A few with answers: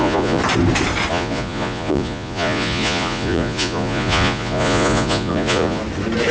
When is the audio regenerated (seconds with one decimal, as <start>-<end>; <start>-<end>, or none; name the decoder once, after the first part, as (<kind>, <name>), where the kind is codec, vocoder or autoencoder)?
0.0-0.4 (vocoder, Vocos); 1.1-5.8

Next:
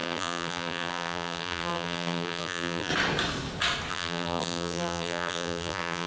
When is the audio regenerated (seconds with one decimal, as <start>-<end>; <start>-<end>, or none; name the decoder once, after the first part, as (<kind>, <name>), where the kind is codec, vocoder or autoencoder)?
0.0-2.9 (vocoder, BigVGAN v2); 3.9-6.1

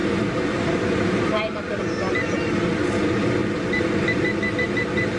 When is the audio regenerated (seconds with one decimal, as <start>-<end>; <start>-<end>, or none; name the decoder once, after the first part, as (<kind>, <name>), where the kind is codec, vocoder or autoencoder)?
0.0-1.8 (vocoder, BigVGAN v2)

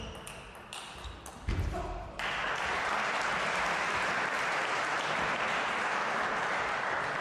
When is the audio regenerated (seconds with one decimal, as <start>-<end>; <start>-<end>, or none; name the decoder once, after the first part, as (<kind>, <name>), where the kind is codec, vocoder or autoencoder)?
2.4-2.9 (vocoder, BigVGAN v2); 4.6-7.2

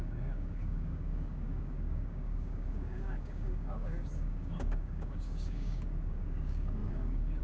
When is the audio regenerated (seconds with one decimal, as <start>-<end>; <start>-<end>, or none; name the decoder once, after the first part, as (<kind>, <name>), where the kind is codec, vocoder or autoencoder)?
0.0-7.4 (codec, DAC)

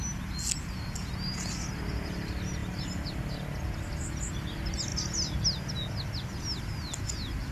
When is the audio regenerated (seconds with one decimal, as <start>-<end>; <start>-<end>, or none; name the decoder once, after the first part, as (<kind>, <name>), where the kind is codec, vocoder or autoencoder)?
none